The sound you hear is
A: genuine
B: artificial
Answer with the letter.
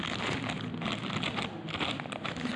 A